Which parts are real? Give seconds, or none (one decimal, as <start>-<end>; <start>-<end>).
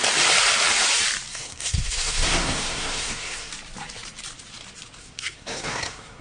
0.0-1.3; 3.5-5.0